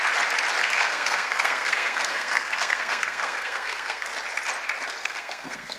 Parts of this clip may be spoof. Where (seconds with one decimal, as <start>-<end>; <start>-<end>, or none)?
0.6-4.1; 5.0-5.8

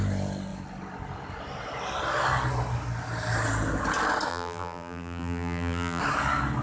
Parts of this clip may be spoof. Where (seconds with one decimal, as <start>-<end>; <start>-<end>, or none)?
4.3-6.0

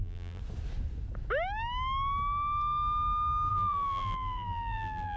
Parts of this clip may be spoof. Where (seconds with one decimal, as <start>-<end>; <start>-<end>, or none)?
0.0-0.4; 3.5-5.2

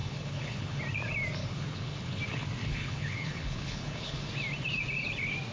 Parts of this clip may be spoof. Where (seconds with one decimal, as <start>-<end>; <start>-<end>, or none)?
0.0-0.8; 1.4-2.2; 2.6-4.3

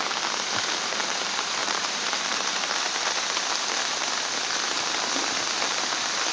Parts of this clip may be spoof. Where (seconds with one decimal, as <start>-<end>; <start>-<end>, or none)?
1.6-3.2

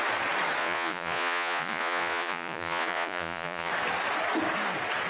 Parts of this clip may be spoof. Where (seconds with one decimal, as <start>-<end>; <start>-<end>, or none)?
0.6-3.7

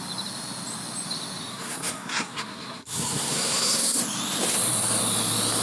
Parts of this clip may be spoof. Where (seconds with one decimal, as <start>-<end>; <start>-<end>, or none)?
1.5-4.0

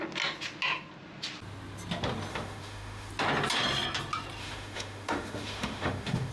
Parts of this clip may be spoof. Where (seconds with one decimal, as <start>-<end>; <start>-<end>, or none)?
2.3-3.1; 4.4-6.3